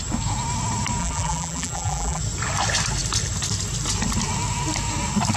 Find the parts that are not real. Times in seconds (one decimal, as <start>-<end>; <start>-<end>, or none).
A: 1.0-2.2